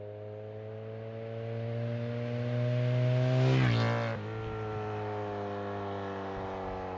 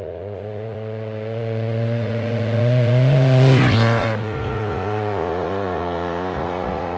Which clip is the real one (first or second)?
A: first